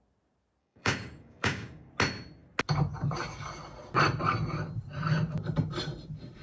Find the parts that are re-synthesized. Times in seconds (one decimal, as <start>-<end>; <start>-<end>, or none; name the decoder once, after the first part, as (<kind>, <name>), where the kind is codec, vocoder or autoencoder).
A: 0.6-1.9 (codec, DAC)

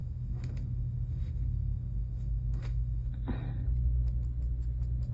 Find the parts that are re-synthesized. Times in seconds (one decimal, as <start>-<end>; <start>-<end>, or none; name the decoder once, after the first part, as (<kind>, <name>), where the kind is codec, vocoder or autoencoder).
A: 0.0-3.1 (autoencoder, DAC-VAE)

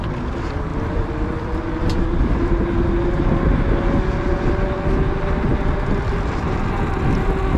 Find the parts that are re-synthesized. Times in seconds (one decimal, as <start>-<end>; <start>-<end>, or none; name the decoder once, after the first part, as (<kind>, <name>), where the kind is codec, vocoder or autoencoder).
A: 0.7-2.6 (vocoder, BigVGAN v2)

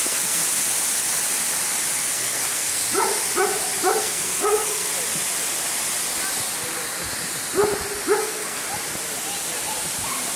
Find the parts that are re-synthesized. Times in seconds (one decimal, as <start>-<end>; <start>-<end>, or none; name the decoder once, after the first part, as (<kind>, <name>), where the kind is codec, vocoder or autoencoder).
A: 0.0-0.4 (codec, SNAC); 1.9-2.8; 4.0-4.9; 8.2-8.6

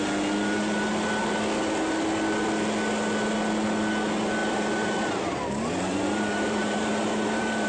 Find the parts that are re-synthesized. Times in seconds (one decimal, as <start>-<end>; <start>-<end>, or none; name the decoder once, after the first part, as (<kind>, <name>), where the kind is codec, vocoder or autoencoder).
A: 4.4-7.7 (vocoder, BigVGAN v2)

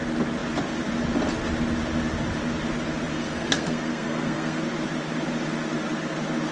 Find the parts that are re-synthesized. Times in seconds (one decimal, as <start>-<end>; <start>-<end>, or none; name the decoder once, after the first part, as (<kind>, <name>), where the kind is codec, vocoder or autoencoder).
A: 3.1-4.6 (codec, SNAC)

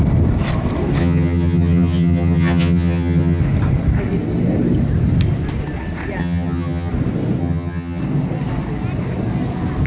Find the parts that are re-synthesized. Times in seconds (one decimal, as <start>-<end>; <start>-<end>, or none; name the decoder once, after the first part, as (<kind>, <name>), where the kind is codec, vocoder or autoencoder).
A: 1.0-3.4 (vocoder, HiFi-GAN); 6.2-6.9; 7.4-8.0